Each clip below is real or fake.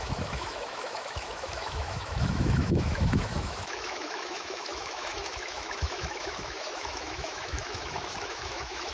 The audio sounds fake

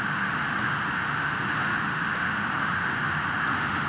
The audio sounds fake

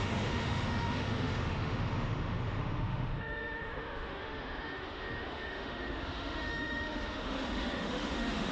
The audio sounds fake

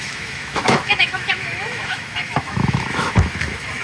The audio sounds fake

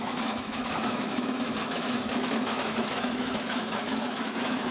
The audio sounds fake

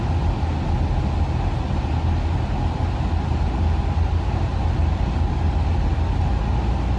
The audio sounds real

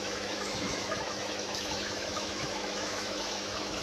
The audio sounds fake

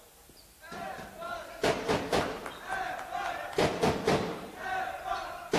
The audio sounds real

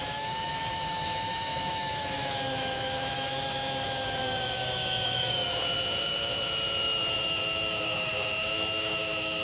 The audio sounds fake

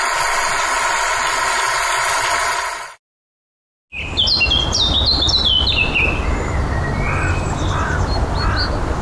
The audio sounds real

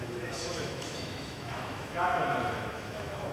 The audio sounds fake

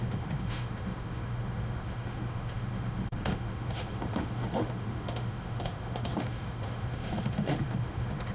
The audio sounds fake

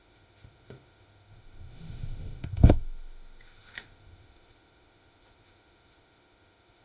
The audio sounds fake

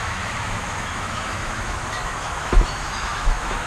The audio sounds fake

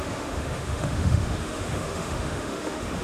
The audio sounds fake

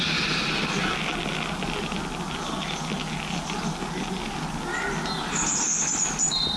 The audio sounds real